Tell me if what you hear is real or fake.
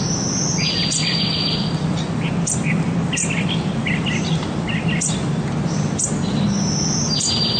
real